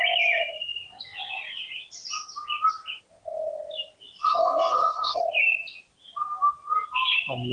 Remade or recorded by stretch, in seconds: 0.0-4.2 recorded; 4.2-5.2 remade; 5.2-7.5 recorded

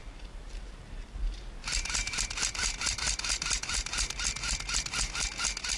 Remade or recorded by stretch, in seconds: 0.0-1.6 recorded; 1.6-5.1 remade; 5.1-5.8 recorded

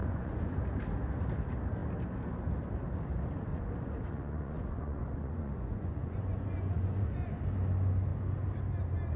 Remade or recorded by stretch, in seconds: 0.0-0.6 remade; 0.6-3.5 recorded; 3.5-7.4 remade; 7.4-9.2 recorded

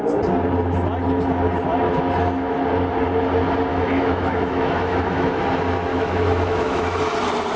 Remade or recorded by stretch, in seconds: 0.0-3.7 recorded; 3.7-5.4 remade; 5.4-5.9 recorded; 5.9-7.0 remade; 7.0-7.6 recorded

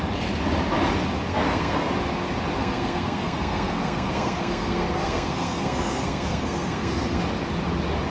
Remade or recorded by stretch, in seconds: 0.0-1.3 recorded; 1.3-1.9 remade; 1.9-2.6 recorded; 2.6-7.2 remade; 7.2-8.1 recorded